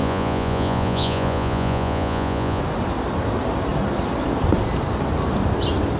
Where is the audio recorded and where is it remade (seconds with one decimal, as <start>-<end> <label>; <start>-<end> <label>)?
0.0-2.6 remade; 2.6-6.0 recorded

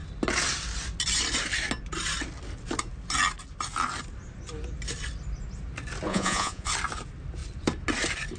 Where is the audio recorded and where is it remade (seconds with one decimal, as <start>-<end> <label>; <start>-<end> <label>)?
0.0-6.1 recorded; 6.1-6.7 remade; 6.7-8.4 recorded